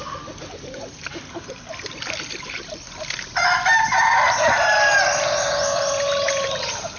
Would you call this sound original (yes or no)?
yes